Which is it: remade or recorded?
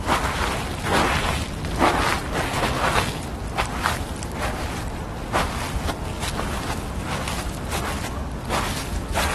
recorded